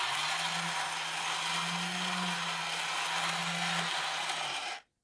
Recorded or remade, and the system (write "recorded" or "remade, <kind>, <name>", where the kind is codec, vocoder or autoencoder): recorded